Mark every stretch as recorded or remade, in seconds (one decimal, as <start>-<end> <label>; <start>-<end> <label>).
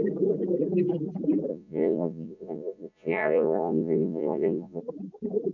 0.0-1.5 recorded; 1.5-4.8 remade; 4.8-5.5 recorded